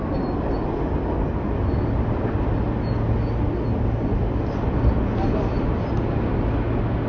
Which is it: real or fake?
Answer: real